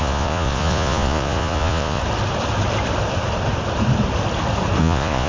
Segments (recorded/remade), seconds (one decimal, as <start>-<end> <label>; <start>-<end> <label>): 0.0-2.0 remade; 2.0-4.8 recorded; 4.8-5.3 remade